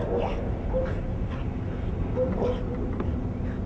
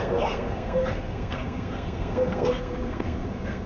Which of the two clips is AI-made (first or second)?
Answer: second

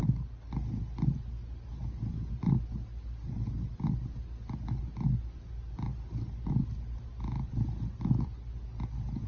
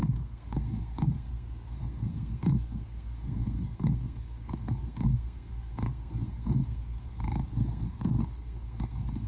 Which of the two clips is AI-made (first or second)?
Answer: second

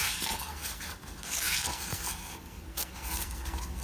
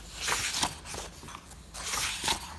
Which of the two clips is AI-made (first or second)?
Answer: first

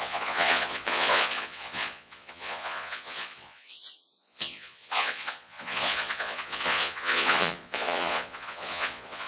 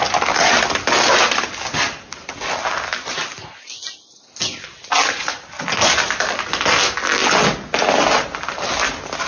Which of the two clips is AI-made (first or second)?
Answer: first